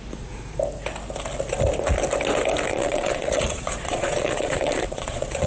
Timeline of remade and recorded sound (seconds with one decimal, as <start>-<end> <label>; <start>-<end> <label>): 0.0-2.7 recorded; 2.7-5.5 remade